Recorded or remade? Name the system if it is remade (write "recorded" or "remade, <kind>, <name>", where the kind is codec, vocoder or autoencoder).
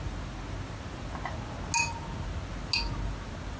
recorded